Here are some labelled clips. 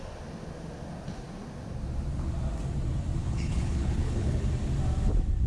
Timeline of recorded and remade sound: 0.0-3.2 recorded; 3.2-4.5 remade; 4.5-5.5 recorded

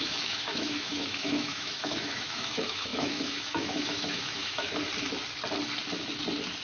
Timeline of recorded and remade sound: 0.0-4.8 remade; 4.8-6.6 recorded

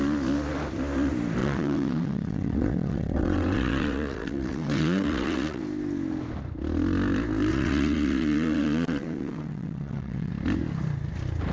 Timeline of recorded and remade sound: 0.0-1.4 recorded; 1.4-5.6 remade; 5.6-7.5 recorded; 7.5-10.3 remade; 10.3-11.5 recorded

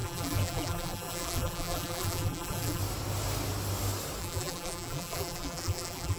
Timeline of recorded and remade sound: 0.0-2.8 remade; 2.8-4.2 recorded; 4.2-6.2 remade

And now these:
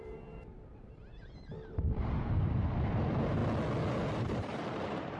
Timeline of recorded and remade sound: 0.0-3.4 remade; 3.4-4.2 recorded; 4.2-5.2 remade

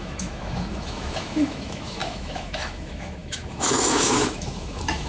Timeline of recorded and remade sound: 0.0-5.1 remade

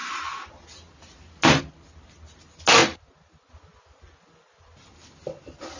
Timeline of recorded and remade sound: 0.0-5.8 recorded

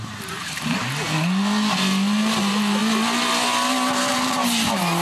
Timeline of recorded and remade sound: 0.0-0.8 remade; 0.8-2.4 recorded; 2.4-2.8 remade; 2.8-4.1 recorded; 4.1-5.0 remade